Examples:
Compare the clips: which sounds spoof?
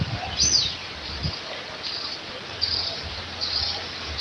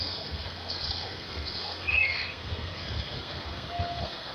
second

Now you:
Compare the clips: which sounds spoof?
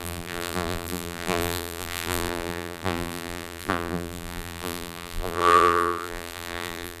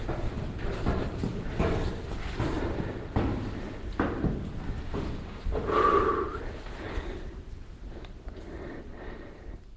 first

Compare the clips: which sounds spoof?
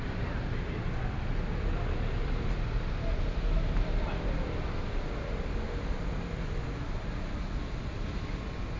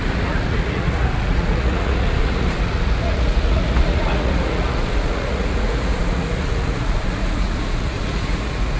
second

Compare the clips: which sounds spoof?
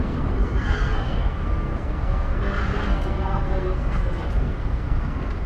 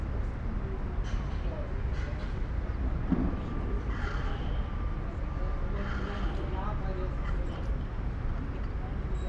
first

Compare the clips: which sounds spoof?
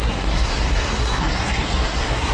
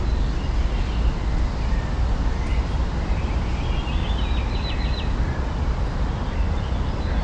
first